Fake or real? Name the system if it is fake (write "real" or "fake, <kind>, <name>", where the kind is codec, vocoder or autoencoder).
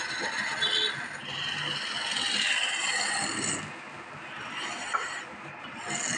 real